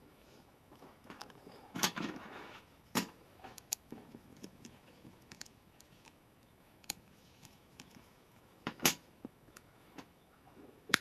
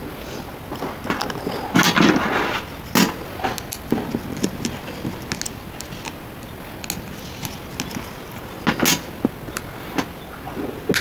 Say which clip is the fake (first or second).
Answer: first